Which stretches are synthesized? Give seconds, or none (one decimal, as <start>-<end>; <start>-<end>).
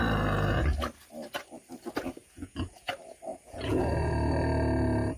2.2-2.9; 3.3-3.9